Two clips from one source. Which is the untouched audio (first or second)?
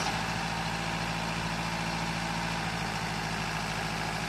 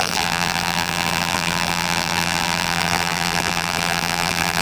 first